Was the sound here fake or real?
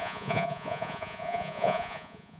fake